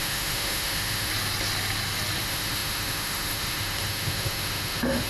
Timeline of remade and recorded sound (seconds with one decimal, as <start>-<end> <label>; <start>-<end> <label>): 0.0-1.1 remade; 1.1-2.2 recorded; 2.2-5.1 remade